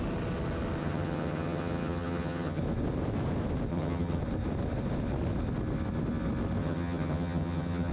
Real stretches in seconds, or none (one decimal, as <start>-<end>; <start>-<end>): 0.0-0.8; 2.6-3.7; 4.2-6.6